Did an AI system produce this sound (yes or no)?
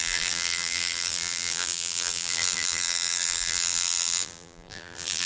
yes